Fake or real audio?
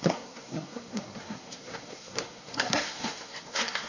fake